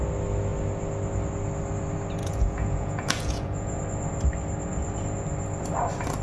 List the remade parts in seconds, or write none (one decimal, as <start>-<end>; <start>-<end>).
2.2-3.8